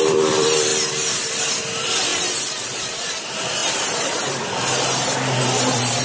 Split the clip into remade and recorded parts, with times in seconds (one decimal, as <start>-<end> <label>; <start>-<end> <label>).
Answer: 0.0-0.7 remade; 0.7-1.3 recorded; 1.3-3.6 remade; 3.6-5.6 recorded; 5.6-6.0 remade